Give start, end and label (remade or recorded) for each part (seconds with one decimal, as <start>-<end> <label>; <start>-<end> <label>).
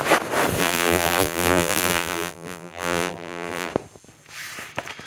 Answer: 0.0-0.6 recorded; 0.6-3.7 remade; 3.7-5.1 recorded